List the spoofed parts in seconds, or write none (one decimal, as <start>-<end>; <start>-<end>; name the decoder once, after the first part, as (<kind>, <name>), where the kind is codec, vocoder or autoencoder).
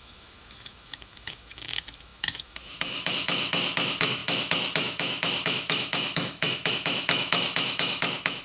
0.0-8.4 (autoencoder, DAC-VAE)